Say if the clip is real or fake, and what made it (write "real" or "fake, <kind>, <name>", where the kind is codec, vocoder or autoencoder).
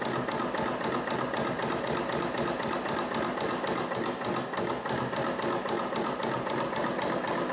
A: real